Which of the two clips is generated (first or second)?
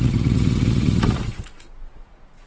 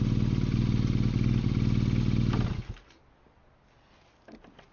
first